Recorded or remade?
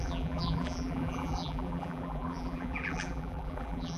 remade